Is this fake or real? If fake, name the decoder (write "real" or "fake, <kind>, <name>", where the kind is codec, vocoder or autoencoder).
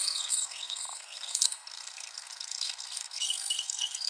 fake, codec, SNAC